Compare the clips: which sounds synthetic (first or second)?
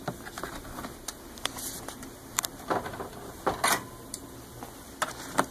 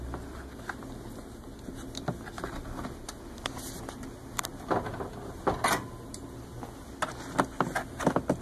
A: first